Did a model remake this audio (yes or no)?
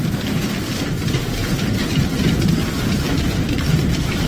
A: yes